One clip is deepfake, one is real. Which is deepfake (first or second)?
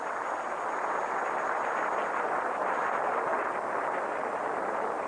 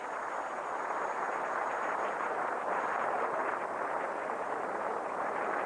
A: second